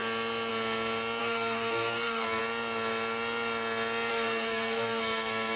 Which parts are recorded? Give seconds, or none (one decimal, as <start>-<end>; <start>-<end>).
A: 0.0-1.2; 2.4-4.1

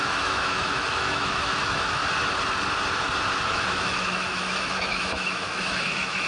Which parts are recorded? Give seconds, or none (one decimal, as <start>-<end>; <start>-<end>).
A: 2.0-3.4